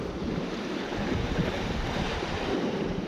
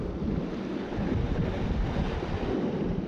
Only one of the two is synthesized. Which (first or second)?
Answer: first